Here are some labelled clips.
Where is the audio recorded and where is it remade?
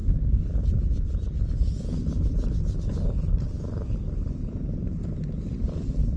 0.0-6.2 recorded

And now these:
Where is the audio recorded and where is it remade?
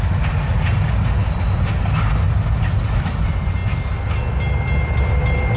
0.0-5.6 recorded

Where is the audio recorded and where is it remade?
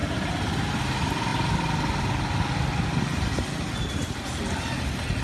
0.0-5.2 recorded